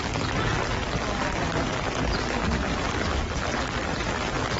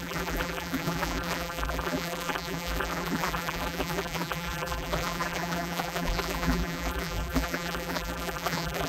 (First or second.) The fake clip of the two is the second